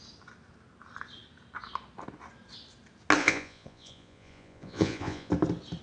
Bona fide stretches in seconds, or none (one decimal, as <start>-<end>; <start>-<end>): 0.0-3.2; 5.3-5.8